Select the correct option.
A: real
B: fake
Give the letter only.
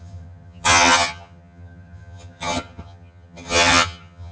B